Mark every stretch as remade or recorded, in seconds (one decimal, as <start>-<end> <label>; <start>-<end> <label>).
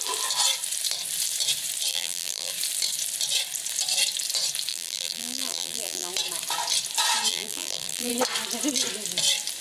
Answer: 0.0-1.9 recorded; 1.9-2.5 remade; 2.5-4.7 recorded; 4.7-6.1 remade; 6.1-7.3 recorded; 7.3-8.1 remade; 8.1-9.6 recorded